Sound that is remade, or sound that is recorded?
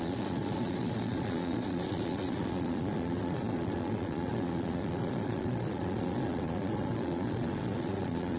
remade